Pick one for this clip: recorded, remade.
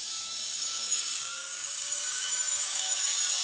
remade